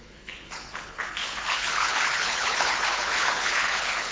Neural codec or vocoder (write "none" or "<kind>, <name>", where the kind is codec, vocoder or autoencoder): codec, HILCodec